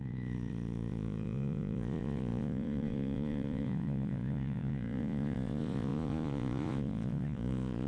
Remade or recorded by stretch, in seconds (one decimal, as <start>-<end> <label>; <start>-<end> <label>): 0.0-7.9 remade